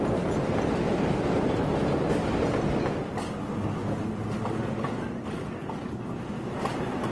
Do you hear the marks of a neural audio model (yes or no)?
no